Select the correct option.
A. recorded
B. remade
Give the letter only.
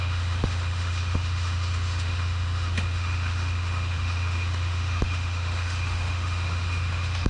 B